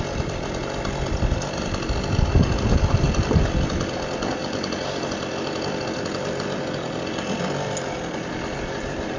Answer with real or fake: real